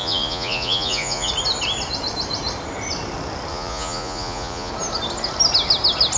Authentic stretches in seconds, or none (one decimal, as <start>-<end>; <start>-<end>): 1.3-3.5; 4.7-6.2